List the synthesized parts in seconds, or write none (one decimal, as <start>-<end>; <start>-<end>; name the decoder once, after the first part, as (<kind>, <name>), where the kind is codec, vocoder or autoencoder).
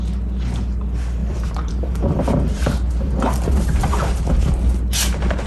1.2-4.5 (vocoder, BigVGAN v2)